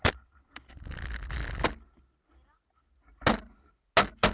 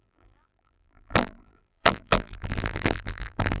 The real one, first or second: first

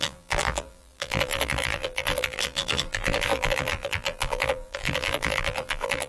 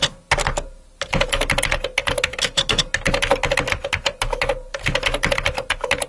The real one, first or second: second